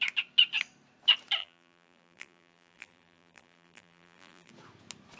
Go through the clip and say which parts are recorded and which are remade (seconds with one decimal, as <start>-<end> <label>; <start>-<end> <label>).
0.0-1.4 recorded; 1.4-4.5 remade; 4.5-5.2 recorded